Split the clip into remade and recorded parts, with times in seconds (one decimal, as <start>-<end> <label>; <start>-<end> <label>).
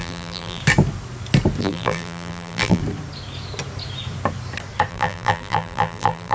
0.0-0.6 remade; 0.6-1.6 recorded; 1.6-2.8 remade; 2.8-4.9 recorded; 4.9-6.3 remade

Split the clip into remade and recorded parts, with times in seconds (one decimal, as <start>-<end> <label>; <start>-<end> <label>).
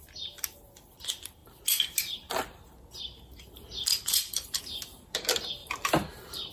0.0-3.9 recorded; 3.9-4.6 remade; 4.6-6.5 recorded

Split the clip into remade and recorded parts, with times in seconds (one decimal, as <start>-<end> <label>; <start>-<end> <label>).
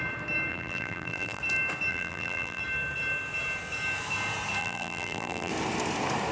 0.0-0.5 recorded; 0.5-1.4 remade; 1.4-1.9 recorded; 1.9-2.6 remade; 2.6-4.6 recorded; 4.6-5.5 remade; 5.5-6.3 recorded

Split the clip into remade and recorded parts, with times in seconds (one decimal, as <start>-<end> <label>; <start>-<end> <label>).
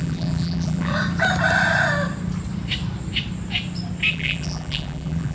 0.0-0.9 remade; 0.9-4.1 recorded; 4.1-5.3 remade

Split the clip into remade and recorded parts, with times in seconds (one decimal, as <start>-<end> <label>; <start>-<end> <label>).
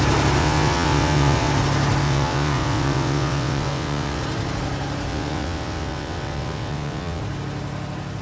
0.0-0.4 recorded; 0.4-1.5 remade; 1.5-2.0 recorded; 2.0-4.2 remade; 4.2-5.1 recorded; 5.1-7.2 remade; 7.2-8.2 recorded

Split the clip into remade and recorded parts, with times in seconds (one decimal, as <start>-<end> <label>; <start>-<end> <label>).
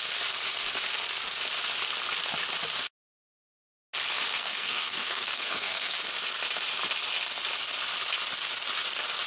0.0-4.3 recorded; 4.3-6.0 remade; 6.0-9.3 recorded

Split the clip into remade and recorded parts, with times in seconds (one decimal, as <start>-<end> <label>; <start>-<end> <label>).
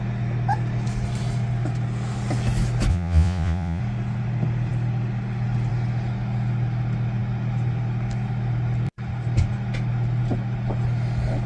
0.0-2.9 recorded; 2.9-3.8 remade; 3.8-11.5 recorded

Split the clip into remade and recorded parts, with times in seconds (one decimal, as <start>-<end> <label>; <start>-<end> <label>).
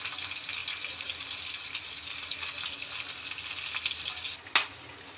0.0-5.2 recorded